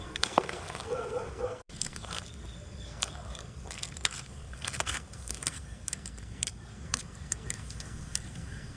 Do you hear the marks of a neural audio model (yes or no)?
yes